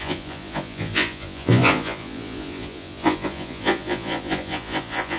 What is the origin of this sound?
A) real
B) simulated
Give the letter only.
B